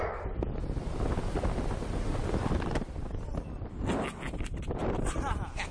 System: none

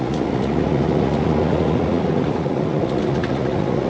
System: vocoder, Vocos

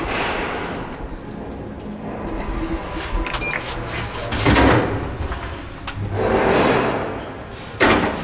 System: none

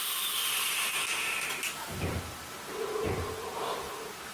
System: vocoder, BigVGAN v2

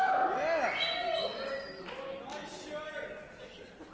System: none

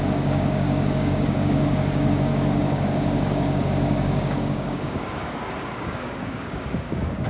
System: codec, DAC